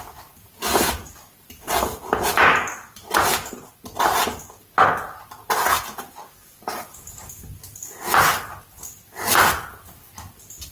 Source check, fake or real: real